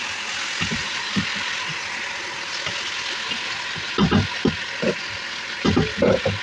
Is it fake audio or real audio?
real